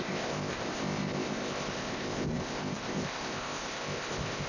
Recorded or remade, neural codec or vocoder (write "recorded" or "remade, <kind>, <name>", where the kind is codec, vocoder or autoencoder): remade, codec, ZipCodec